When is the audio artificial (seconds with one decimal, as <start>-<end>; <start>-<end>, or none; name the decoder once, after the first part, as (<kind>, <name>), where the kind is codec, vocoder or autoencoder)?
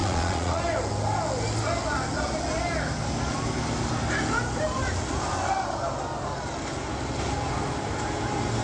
0.0-0.6 (vocoder, Vocos)